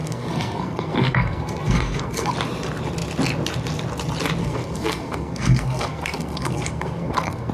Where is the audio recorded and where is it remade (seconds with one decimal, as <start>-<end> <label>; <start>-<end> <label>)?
0.0-2.3 remade; 2.3-4.4 recorded; 4.4-7.5 remade